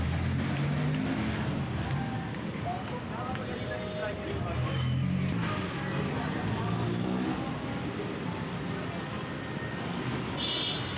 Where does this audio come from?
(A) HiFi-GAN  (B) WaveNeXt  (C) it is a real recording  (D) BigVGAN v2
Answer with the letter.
C